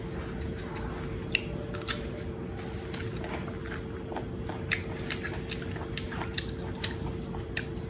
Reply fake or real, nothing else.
real